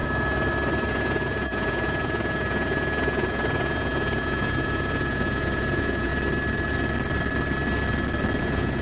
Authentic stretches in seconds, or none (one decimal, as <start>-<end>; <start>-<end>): 0.0-0.9; 6.1-8.4